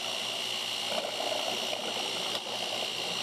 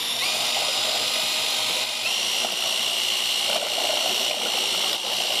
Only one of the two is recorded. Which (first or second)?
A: first